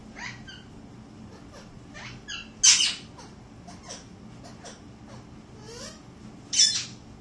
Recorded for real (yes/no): yes